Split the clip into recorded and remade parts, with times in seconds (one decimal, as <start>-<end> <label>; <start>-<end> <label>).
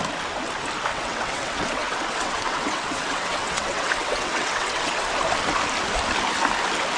0.0-0.9 recorded; 0.9-5.1 remade; 5.1-7.0 recorded